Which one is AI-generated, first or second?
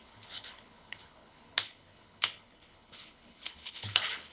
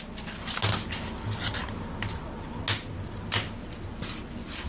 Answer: first